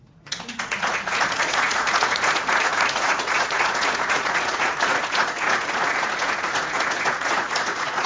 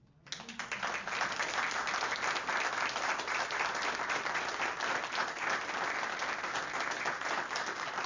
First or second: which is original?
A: second